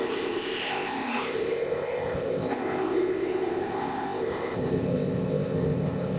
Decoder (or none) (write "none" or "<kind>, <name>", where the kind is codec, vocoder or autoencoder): codec, ZipCodec